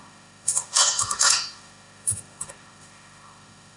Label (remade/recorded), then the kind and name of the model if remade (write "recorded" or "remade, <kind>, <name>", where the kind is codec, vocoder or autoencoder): remade, autoencoder, DAC-VAE